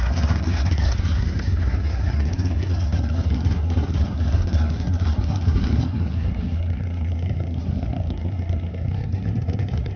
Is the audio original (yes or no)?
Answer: no